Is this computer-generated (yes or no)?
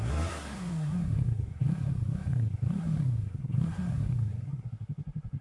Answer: yes